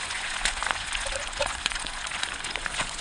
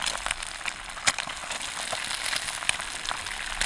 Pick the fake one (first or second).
first